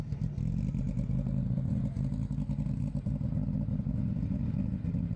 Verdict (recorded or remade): recorded